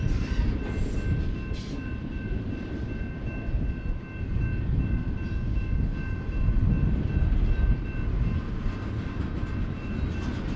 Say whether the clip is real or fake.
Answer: real